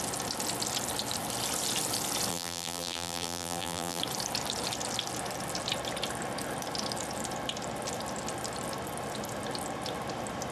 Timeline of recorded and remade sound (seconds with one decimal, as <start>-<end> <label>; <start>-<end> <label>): 0.0-2.3 recorded; 2.3-4.0 remade; 4.0-10.5 recorded